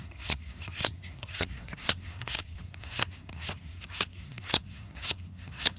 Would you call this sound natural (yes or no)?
no